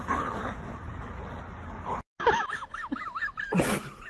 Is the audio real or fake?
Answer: real